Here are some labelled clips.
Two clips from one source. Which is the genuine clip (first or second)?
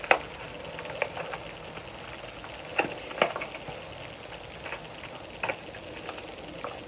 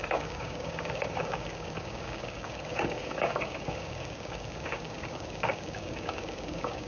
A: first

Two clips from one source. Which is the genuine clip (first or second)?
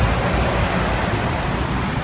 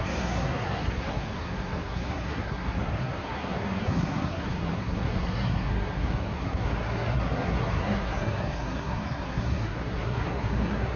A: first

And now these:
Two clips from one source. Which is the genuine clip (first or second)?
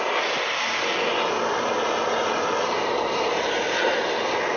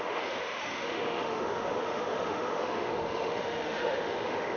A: first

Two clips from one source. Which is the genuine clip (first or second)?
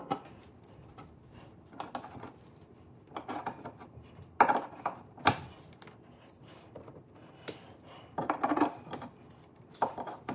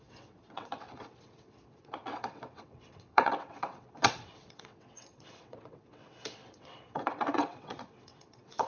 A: first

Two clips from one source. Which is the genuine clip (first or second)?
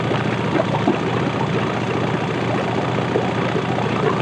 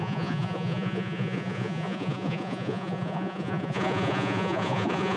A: first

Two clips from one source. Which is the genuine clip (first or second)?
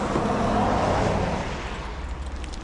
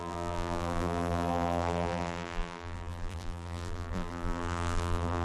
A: first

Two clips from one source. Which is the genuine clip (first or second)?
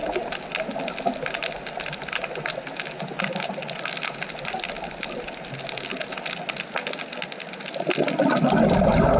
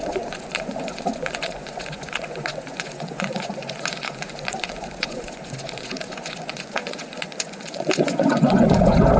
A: first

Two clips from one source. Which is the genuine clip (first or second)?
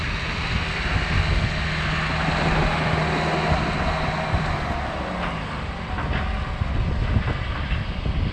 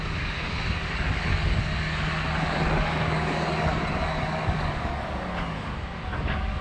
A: first